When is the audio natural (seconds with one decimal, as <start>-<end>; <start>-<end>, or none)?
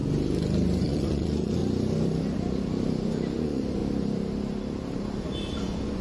0.0-0.8; 1.6-3.4; 3.8-5.6